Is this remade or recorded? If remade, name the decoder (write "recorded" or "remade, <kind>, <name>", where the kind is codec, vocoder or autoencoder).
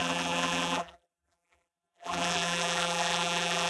remade, vocoder, BigVGAN v2